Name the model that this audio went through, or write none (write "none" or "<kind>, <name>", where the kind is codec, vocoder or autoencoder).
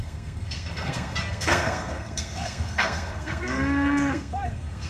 codec, SNAC